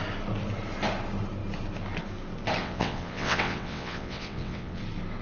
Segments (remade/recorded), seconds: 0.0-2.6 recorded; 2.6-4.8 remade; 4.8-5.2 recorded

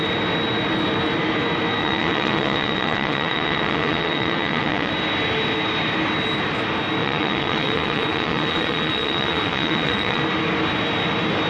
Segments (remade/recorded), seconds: 0.0-1.8 recorded; 1.8-4.9 remade; 4.9-7.0 recorded; 7.0-10.2 remade; 10.2-11.5 recorded

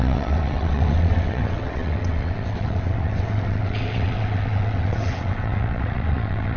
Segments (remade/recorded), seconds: 0.0-6.6 remade

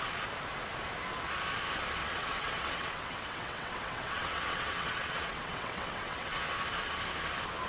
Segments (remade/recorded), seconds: 0.0-2.0 recorded; 2.0-6.4 remade; 6.4-7.7 recorded

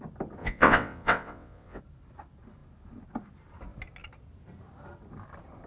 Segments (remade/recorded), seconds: 0.0-0.4 recorded; 0.4-1.8 remade; 1.8-5.7 recorded

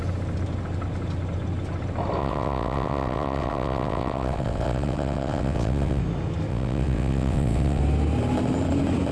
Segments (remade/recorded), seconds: 0.0-2.2 recorded; 2.2-6.0 remade; 6.0-6.5 recorded; 6.5-7.8 remade; 7.8-9.1 recorded